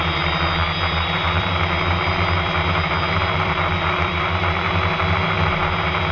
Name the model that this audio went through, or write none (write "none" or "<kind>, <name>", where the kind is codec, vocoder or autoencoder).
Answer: vocoder, BigVGAN v2